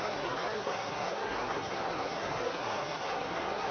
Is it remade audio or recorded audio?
remade